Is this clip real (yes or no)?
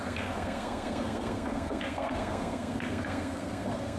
no